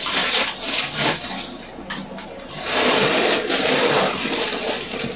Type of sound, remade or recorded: recorded